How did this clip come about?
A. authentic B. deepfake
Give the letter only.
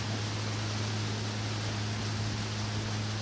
A